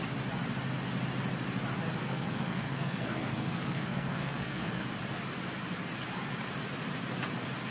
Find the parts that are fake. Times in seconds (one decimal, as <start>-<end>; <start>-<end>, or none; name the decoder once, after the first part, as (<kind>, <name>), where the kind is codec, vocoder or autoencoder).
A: 2.0-4.9 (codec, SNAC)